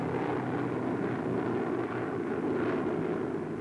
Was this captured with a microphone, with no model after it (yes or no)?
yes